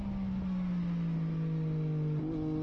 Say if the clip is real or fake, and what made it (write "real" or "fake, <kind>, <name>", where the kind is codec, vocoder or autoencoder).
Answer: real